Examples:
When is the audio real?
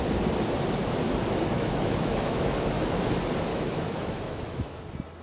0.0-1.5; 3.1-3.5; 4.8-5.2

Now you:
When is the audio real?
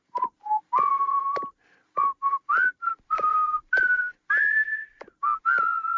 0.0-6.0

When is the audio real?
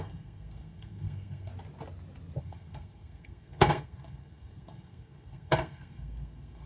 1.5-2.4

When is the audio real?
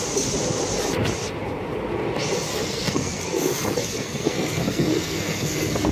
0.0-2.5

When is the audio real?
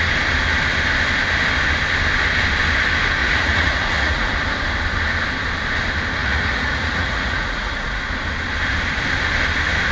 0.0-3.2; 4.3-6.2; 8.0-9.9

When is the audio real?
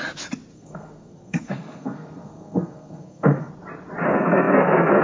0.0-0.5; 3.5-4.1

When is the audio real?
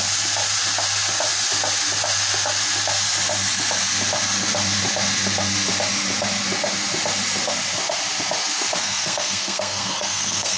0.0-8.8